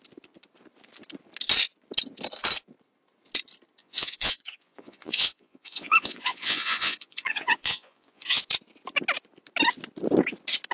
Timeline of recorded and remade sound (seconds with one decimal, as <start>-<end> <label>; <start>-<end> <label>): 0.0-3.8 recorded; 3.8-8.5 remade; 8.5-10.7 recorded